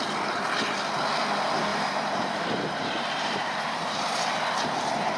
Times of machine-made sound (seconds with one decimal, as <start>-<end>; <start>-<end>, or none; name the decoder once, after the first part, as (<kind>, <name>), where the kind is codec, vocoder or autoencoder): 1.7-4.4 (vocoder, BigVGAN v2)